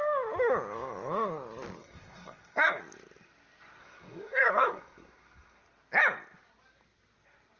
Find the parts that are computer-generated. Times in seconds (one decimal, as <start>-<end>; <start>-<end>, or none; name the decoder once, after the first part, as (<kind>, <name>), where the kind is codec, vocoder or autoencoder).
1.8-2.8 (codec, SNAC); 3.8-5.6